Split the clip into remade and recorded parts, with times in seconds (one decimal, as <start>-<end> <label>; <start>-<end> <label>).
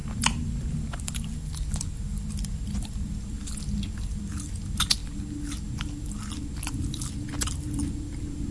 0.0-8.5 recorded